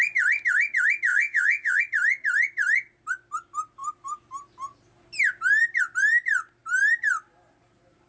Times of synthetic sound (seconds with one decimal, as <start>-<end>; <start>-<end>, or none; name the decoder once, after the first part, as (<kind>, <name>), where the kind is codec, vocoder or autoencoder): 1.1-1.8 (vocoder, Vocos)